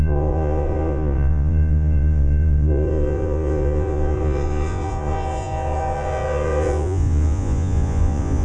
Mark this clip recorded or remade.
remade